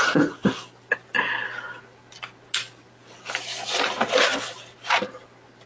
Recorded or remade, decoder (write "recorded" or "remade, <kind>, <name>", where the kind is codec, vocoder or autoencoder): recorded